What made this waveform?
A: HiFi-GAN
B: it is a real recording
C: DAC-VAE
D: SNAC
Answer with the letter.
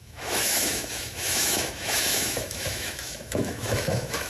C